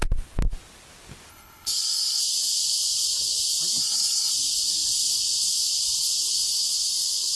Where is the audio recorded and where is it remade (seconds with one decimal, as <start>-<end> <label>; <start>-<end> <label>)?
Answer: 0.0-1.3 recorded; 1.3-2.2 remade; 2.2-3.8 recorded; 3.8-4.3 remade; 4.3-7.4 recorded